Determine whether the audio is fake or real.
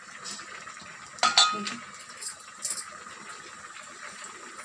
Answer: real